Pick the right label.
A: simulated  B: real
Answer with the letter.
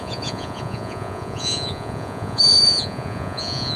A